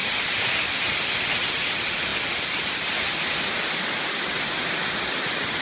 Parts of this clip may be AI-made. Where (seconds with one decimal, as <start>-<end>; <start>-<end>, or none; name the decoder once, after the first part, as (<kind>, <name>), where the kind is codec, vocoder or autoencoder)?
2.1-4.4 (vocoder, BigVGAN v2)